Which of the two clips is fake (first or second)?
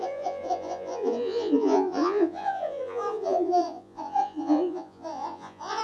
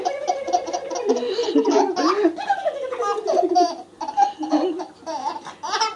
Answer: first